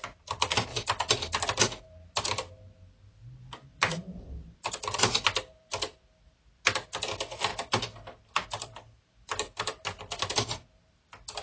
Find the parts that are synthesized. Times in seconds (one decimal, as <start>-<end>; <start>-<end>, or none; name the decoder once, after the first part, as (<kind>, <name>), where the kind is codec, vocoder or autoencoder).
3.7-4.7 (vocoder, BigVGAN v2); 7.5-9.0